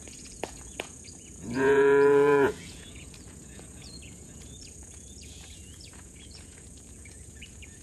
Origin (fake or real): fake